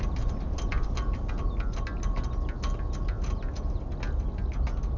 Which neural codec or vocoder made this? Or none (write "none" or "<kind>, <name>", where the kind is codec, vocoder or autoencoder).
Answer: none